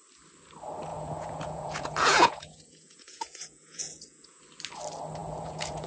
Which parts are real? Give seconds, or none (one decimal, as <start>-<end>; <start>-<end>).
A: 0.0-0.9; 4.4-5.2